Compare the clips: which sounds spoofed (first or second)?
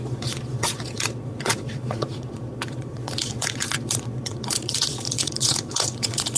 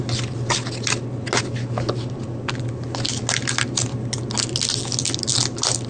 first